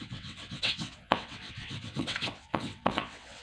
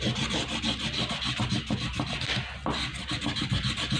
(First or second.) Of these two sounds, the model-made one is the first